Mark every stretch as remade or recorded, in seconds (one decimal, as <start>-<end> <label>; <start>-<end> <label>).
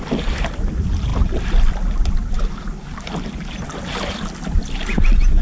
0.0-5.4 recorded